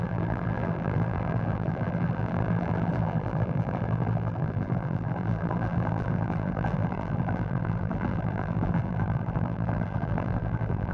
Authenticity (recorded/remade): remade